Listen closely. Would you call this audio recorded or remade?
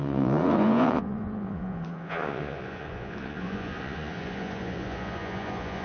remade